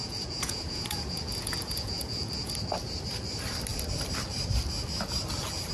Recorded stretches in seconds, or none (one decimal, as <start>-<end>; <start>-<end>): 2.5-5.7